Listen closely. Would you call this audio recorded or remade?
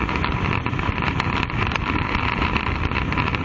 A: remade